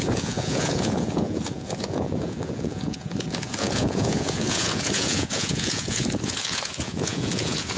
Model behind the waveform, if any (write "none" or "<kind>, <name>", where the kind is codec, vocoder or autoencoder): vocoder, Vocos